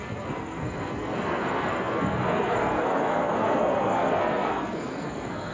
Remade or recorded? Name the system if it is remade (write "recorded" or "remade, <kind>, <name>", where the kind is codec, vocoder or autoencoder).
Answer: remade, codec, SNAC